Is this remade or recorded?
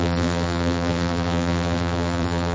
remade